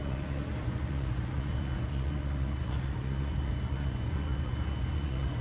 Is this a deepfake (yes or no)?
yes